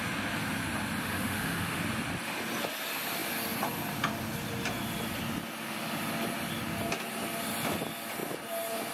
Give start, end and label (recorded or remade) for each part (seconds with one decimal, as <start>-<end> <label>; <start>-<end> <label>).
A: 0.0-1.0 recorded; 1.0-1.8 remade; 1.8-8.9 recorded